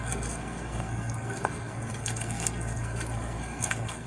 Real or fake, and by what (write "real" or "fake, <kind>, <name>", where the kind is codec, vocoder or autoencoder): fake, codec, SNAC